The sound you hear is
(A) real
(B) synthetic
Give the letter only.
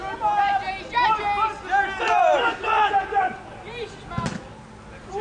A